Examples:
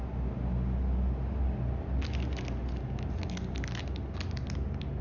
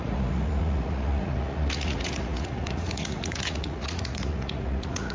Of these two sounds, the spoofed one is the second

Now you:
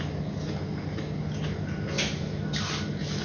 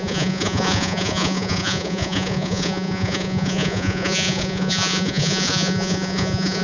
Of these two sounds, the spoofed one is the second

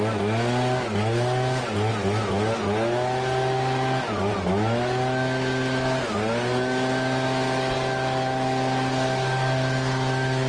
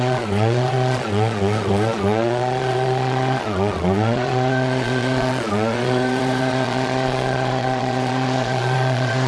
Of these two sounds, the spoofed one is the second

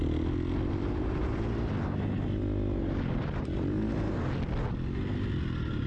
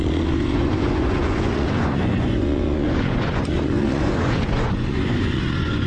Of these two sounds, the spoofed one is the second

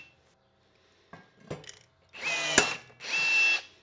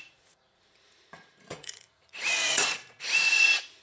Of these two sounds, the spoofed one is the second